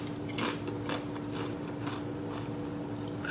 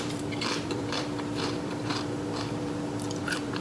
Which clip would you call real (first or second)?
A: first